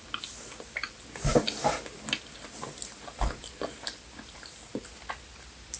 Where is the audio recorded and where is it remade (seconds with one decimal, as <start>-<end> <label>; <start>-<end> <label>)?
0.0-5.8 recorded